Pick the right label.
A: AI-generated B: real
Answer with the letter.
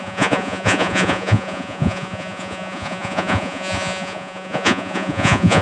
A